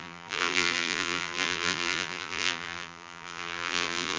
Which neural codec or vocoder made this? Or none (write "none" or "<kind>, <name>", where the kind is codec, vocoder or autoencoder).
vocoder, BigVGAN v2